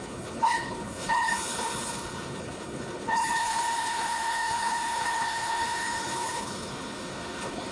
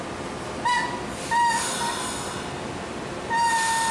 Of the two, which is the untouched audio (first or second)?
second